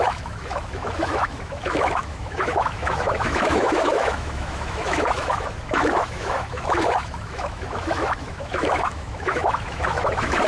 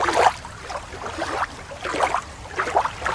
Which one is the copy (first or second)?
first